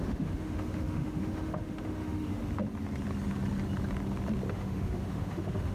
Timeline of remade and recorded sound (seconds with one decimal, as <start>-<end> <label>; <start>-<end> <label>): 0.0-2.4 remade; 2.4-4.5 recorded; 4.5-5.7 remade

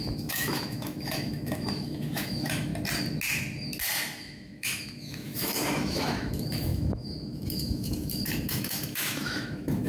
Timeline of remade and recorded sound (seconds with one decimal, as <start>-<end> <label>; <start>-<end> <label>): 0.0-2.7 remade; 2.7-4.2 recorded; 4.2-9.9 remade

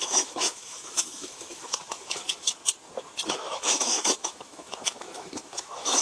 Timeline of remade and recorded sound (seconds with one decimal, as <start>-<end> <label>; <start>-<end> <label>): 0.0-2.6 remade; 2.6-3.3 recorded; 3.3-6.0 remade

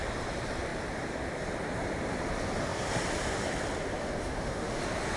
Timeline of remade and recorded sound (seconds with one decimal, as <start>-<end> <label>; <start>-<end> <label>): 0.0-4.0 recorded; 4.0-4.8 remade; 4.8-5.2 recorded

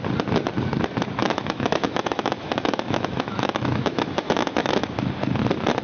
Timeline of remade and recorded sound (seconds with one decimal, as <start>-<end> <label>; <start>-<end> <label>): 0.0-1.2 recorded; 1.2-4.7 remade; 4.7-5.8 recorded